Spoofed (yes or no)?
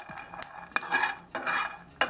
no